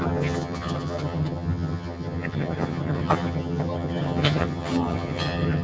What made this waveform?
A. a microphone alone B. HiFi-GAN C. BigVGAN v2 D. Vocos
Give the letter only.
B